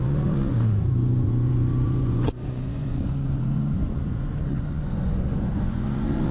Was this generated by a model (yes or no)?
yes